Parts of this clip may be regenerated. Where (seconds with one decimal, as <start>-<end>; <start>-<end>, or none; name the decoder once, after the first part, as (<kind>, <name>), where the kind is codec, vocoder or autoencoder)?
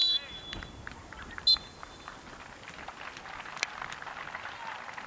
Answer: none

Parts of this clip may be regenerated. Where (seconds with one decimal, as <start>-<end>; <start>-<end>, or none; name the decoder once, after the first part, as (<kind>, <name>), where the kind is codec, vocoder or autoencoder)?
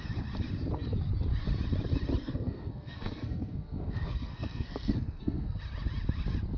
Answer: 2.2-5.6 (codec, SNAC)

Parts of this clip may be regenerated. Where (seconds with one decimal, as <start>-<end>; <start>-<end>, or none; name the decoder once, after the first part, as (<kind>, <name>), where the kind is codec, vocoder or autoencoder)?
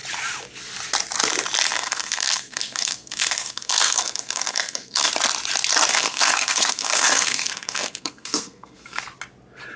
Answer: 1.7-5.1 (codec, SNAC); 5.9-9.0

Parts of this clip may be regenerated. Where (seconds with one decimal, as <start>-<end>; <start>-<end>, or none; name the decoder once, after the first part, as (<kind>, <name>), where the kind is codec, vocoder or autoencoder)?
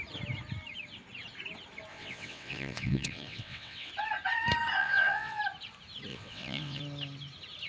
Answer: 1.9-3.9 (vocoder, WaveNeXt); 4.8-5.4; 6.1-6.8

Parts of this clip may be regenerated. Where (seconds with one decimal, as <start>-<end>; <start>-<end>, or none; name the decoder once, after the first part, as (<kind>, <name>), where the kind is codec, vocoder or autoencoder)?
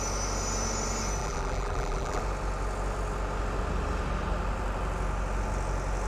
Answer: 1.2-2.2 (vocoder, BigVGAN v2)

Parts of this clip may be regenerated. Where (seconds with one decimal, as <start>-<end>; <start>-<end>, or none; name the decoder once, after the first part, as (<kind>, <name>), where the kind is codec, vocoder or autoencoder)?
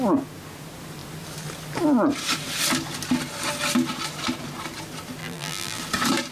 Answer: 5.2-5.8 (vocoder, BigVGAN v2)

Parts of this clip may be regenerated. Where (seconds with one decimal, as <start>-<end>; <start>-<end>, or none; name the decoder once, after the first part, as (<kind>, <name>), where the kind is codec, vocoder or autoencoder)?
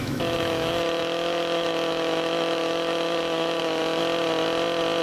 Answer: 0.0-4.0 (autoencoder, DAC-VAE)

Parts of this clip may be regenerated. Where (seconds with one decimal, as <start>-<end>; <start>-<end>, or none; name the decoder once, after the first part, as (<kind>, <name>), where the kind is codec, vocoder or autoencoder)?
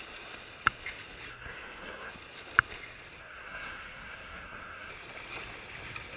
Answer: 1.3-2.1 (codec, SNAC); 3.2-4.9